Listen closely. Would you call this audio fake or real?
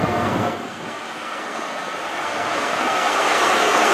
fake